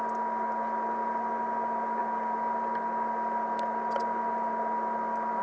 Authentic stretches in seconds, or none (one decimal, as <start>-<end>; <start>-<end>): 0.0-5.4